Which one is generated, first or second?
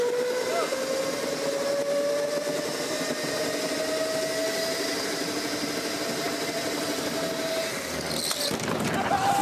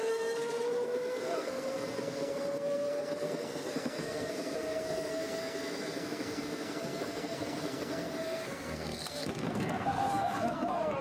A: second